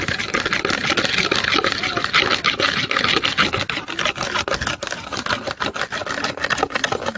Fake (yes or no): no